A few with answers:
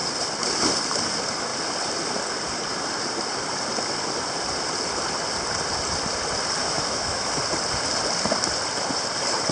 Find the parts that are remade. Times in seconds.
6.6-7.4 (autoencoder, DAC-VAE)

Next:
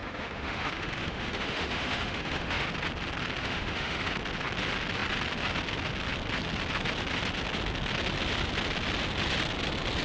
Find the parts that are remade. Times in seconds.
0.0-2.7 (autoencoder, DAC-VAE); 3.4-4.1

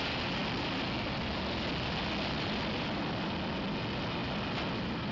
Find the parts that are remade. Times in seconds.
none

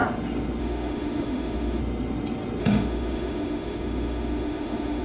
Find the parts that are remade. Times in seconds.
0.6-1.8 (autoencoder, DAC-VAE); 2.6-5.0